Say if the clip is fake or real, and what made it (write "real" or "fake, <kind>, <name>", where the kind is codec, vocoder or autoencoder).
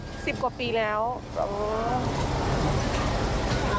real